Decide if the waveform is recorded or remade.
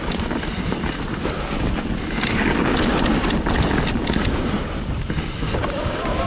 recorded